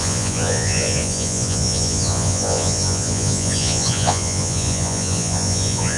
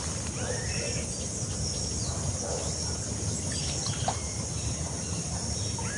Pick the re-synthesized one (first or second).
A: first